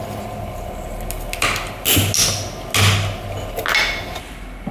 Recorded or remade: recorded